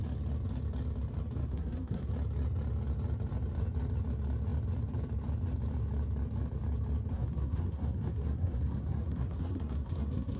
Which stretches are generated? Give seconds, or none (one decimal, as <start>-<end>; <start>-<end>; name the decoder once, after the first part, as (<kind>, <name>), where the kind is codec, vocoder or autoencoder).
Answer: 1.4-2.1 (codec, SNAC); 7.1-10.4